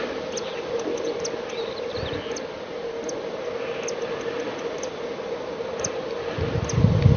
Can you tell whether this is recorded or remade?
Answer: recorded